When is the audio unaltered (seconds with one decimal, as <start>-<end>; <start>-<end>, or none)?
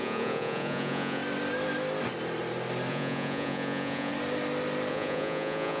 1.2-2.9; 4.1-4.9